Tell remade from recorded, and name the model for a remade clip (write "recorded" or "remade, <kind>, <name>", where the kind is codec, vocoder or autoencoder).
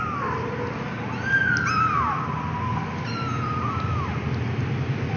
recorded